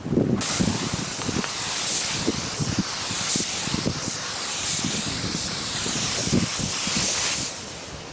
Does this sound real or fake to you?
real